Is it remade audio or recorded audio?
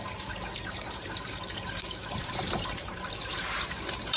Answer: remade